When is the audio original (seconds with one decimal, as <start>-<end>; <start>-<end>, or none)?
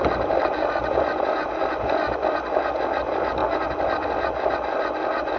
0.0-5.4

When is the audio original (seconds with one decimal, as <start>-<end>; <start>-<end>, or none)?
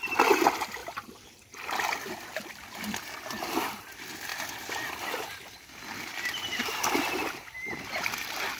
0.0-0.8; 2.6-4.3; 4.9-6.1; 6.7-8.6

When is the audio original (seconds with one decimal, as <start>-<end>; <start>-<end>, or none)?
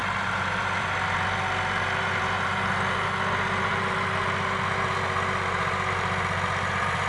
0.9-3.7